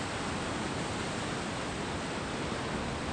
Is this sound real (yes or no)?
yes